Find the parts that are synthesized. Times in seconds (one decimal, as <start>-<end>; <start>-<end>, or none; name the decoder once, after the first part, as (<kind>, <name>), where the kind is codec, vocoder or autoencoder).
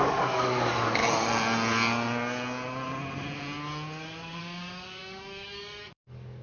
0.0-1.3 (codec, DAC); 4.4-6.4